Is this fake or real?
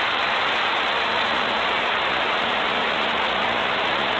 fake